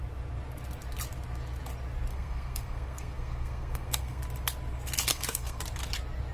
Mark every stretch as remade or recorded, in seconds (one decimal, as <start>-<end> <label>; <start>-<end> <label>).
0.0-2.1 recorded; 2.1-4.2 remade; 4.2-5.1 recorded; 5.1-5.6 remade; 5.6-6.3 recorded